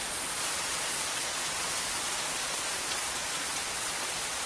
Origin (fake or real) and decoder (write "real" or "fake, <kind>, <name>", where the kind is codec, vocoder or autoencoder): fake, vocoder, Vocos